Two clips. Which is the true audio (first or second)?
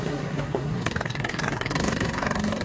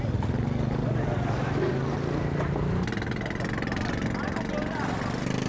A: second